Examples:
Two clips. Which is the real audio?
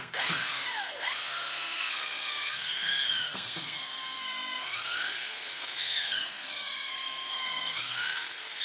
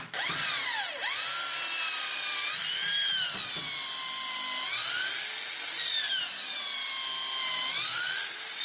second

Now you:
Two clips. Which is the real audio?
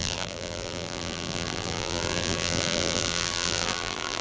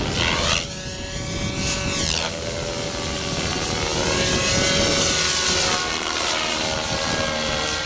second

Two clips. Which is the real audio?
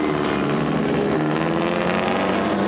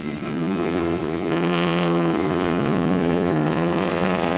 first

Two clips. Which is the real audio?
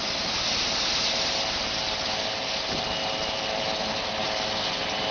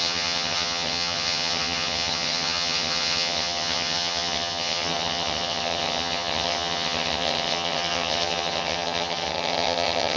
first